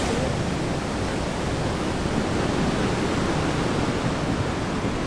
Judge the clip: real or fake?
real